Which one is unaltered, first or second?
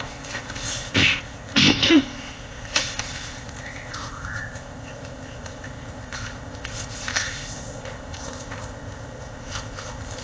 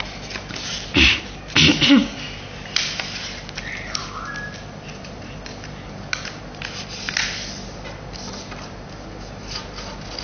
second